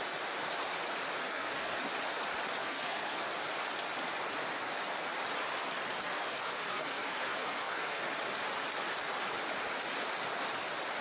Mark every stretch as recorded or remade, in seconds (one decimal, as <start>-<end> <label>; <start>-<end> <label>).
0.0-1.2 recorded; 1.2-1.8 remade; 1.8-2.6 recorded; 2.6-3.3 remade; 3.3-6.1 recorded; 6.1-8.0 remade; 8.0-11.0 recorded